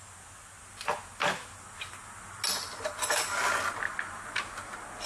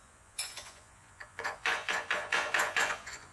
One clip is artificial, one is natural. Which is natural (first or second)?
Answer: first